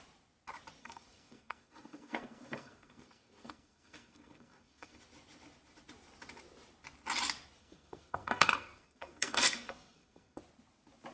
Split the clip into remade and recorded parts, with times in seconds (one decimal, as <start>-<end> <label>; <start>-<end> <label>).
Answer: 0.0-0.8 recorded; 0.8-5.0 remade; 5.0-7.6 recorded; 7.6-10.4 remade; 10.4-11.1 recorded